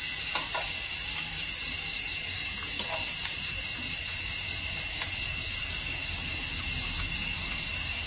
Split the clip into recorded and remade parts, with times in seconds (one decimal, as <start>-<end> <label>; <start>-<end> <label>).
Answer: 0.0-8.1 recorded